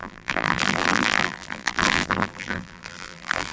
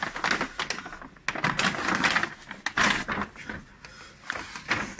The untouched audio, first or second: second